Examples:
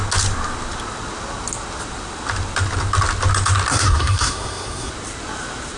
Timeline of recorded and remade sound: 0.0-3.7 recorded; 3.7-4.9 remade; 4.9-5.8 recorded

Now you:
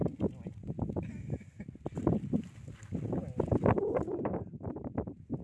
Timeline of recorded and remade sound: 0.0-3.2 recorded; 3.2-4.7 remade; 4.7-5.4 recorded

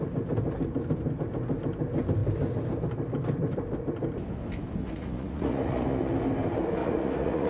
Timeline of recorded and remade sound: 0.0-4.8 recorded; 4.8-6.1 remade; 6.1-6.8 recorded; 6.8-7.5 remade

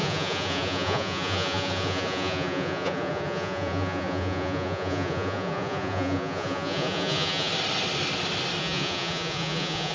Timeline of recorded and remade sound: 0.0-7.5 remade; 7.5-8.6 recorded; 8.6-9.9 remade

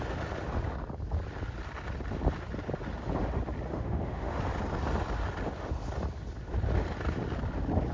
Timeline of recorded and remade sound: 0.0-3.7 recorded; 3.7-4.4 remade; 4.4-7.9 recorded

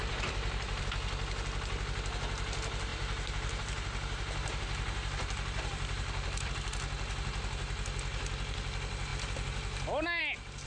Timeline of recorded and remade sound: 0.0-0.8 remade; 0.8-2.9 recorded; 2.9-6.5 remade; 6.5-10.7 recorded

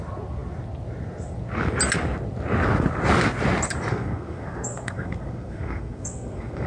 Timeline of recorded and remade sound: 0.0-3.9 recorded; 3.9-6.7 remade